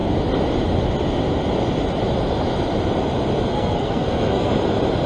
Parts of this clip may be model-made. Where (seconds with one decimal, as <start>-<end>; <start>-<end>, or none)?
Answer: 3.5-4.5